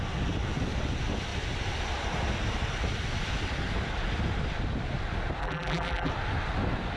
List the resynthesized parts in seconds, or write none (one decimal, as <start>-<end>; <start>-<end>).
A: 5.4-6.1